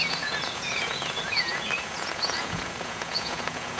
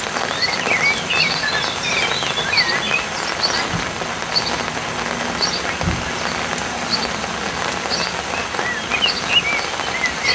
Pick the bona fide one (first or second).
second